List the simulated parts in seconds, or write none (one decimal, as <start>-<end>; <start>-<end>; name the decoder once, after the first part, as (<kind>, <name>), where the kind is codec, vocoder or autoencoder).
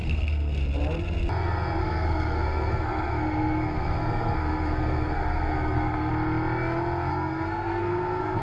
0.0-0.6 (codec, SNAC); 1.8-6.1; 7.1-8.4